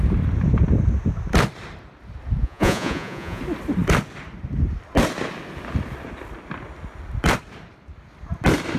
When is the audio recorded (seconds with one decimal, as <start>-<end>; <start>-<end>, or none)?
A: 0.0-2.4; 3.4-8.8